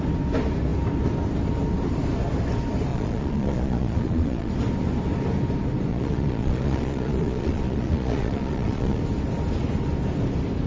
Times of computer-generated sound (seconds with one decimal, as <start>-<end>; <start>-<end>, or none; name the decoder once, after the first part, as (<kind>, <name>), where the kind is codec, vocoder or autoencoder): 2.9-4.5 (vocoder, Vocos); 5.9-9.0